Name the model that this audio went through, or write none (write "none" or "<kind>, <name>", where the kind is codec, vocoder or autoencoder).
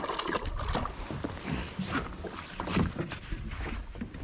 none